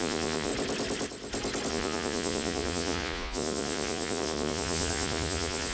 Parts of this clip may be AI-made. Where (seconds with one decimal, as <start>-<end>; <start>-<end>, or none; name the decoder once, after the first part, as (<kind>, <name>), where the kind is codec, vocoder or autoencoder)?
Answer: 0.0-0.5 (vocoder, Vocos); 1.7-5.7